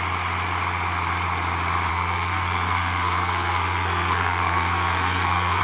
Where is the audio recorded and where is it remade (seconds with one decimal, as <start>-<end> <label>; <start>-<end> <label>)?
0.0-1.9 recorded; 1.9-5.6 remade